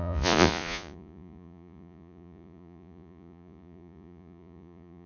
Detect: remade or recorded remade